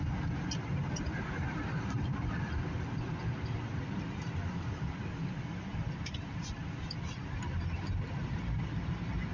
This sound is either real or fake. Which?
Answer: real